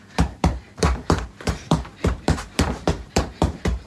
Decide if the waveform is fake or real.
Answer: fake